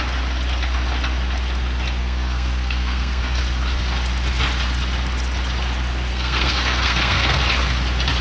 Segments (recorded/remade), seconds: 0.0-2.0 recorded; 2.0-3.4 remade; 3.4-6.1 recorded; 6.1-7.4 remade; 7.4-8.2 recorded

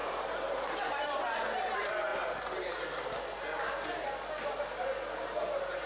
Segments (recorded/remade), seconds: 0.0-1.0 remade; 1.0-5.9 recorded